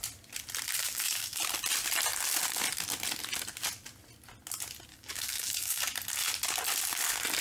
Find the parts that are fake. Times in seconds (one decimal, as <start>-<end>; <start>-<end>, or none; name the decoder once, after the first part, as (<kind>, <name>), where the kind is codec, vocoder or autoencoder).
0.8-1.4 (codec, DAC); 4.9-5.8